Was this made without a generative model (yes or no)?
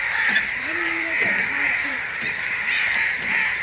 no